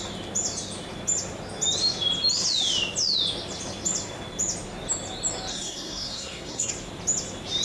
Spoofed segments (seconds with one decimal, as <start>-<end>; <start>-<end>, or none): 5.5-6.7